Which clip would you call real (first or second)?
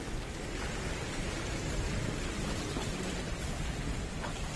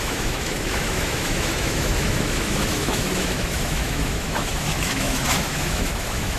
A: first